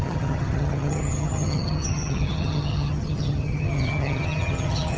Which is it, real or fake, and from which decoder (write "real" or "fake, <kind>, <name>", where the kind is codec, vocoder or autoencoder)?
fake, vocoder, HiFi-GAN